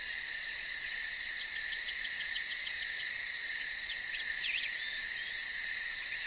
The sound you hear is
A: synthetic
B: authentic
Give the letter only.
A